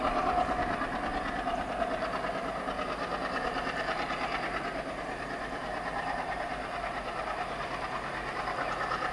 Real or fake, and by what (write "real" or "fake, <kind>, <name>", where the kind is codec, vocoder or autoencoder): real